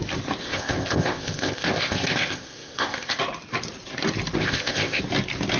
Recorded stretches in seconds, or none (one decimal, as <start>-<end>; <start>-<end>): 0.0-0.4; 3.2-4.4; 5.0-5.6